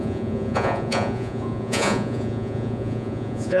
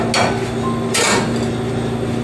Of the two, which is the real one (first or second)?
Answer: second